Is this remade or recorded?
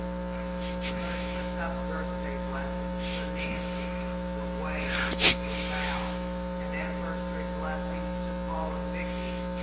remade